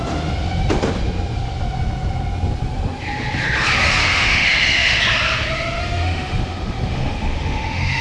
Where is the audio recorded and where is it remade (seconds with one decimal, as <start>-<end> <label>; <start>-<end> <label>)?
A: 0.0-4.0 recorded; 4.0-5.0 remade; 5.0-5.8 recorded; 5.8-8.0 remade